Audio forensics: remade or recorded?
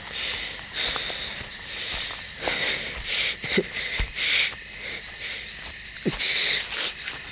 recorded